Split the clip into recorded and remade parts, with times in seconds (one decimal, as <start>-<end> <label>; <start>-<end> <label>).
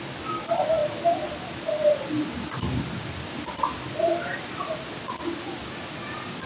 0.0-6.5 recorded